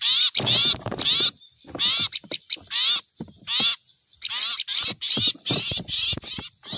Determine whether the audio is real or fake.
real